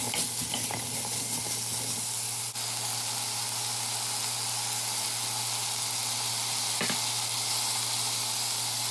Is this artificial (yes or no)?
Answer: no